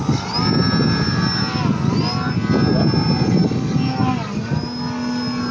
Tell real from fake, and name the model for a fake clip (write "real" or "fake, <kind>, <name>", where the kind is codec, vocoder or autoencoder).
real